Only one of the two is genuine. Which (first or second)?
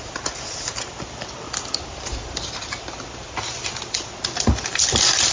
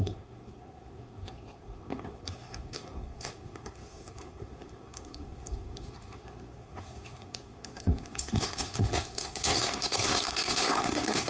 first